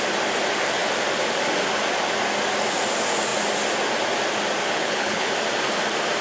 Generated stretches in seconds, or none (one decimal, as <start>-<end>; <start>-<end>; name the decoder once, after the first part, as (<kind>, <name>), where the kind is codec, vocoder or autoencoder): 4.6-5.3 (codec, HILCodec)